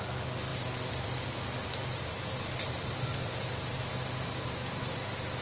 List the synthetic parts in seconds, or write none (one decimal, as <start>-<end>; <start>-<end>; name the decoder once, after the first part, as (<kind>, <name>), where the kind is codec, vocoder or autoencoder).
none